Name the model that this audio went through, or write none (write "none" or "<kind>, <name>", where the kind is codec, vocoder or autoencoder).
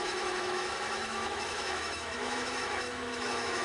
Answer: autoencoder, DAC-VAE